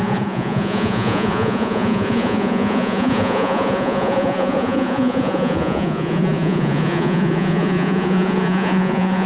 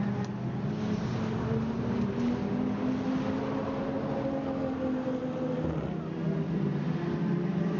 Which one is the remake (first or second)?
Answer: first